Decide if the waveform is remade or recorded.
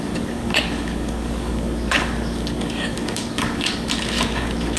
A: remade